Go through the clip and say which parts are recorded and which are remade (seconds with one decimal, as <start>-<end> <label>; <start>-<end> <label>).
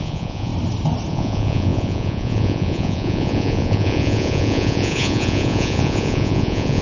0.0-0.5 remade; 0.5-1.1 recorded; 1.1-6.8 remade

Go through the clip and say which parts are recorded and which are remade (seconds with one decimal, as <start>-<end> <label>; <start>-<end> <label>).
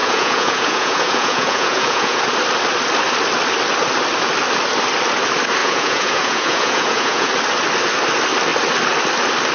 0.0-2.2 remade; 2.2-5.6 recorded; 5.6-7.3 remade; 7.3-9.5 recorded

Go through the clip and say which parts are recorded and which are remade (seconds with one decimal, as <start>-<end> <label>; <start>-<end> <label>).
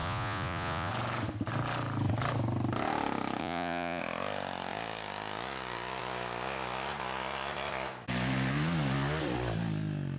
0.0-0.9 remade; 0.9-3.4 recorded; 3.4-4.0 remade; 4.0-10.2 recorded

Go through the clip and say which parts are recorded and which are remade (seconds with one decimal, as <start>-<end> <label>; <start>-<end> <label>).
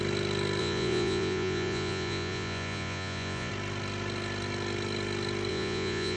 0.0-0.6 recorded; 0.6-3.5 remade; 3.5-5.5 recorded; 5.5-6.2 remade